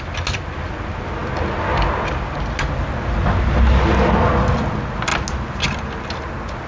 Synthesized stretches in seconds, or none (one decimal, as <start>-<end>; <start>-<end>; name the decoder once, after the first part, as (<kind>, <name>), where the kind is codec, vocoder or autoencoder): none

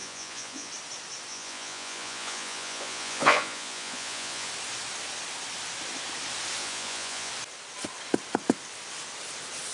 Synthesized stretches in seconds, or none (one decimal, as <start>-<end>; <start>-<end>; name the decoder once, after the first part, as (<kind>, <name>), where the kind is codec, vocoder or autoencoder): 0.0-0.7 (vocoder, Vocos); 1.3-4.5; 6.6-7.3

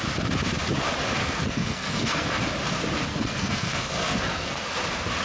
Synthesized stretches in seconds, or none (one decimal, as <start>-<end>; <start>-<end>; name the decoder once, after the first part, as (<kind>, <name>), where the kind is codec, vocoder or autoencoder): 1.2-2.4 (codec, SNAC); 3.1-4.7